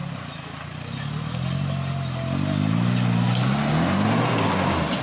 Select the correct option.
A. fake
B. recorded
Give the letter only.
B